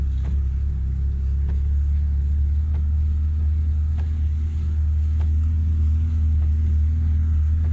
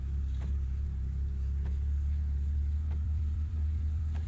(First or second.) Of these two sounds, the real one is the first